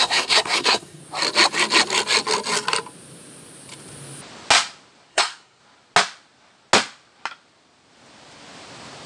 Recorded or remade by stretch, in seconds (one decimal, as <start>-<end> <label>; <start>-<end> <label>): 0.0-1.0 remade; 1.0-5.1 recorded; 5.1-5.6 remade; 5.6-9.1 recorded